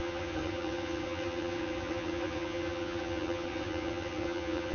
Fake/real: fake